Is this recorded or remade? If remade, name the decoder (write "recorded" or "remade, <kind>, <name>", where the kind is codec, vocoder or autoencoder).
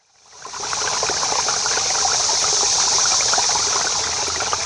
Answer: recorded